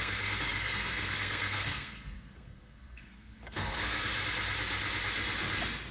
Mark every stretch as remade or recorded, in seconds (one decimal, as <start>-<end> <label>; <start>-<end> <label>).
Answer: 0.0-4.1 remade; 4.1-5.9 recorded